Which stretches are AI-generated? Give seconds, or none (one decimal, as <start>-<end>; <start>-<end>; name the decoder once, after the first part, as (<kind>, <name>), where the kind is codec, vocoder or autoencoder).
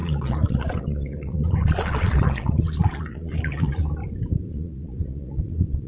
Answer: 0.0-4.0 (vocoder, Vocos); 4.5-5.9